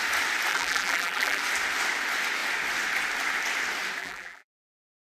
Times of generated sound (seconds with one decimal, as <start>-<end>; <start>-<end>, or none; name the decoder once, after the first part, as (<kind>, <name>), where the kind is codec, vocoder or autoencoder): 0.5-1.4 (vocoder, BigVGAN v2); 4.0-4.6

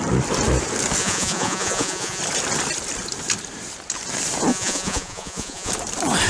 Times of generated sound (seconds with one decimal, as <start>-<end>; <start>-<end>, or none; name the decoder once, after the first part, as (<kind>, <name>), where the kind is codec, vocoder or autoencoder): 1.0-2.2 (vocoder, Vocos); 4.5-5.7

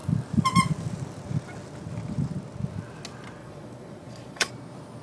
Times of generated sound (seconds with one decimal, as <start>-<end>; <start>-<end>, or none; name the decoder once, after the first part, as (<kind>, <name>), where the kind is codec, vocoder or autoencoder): 3.4-4.5 (vocoder, Vocos)

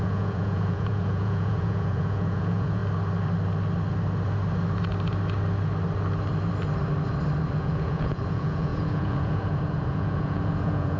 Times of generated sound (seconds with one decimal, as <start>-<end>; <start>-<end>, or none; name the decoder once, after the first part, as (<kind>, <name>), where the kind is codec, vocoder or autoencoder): 0.0-2.8 (vocoder, Vocos); 7.5-11.0

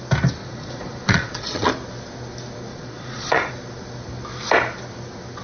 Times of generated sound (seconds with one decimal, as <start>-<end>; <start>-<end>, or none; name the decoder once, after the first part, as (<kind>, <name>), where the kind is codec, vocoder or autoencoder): 0.4-1.7 (vocoder, Vocos); 2.7-3.5